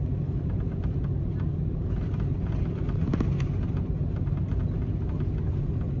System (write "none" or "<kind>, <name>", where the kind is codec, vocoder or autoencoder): none